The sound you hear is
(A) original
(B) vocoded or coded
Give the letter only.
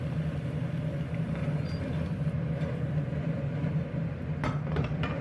B